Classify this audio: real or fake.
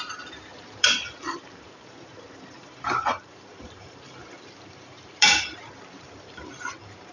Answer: fake